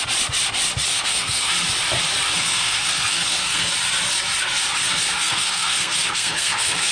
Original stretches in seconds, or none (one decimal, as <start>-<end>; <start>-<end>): 0.0-0.9; 1.5-2.4; 3.7-5.2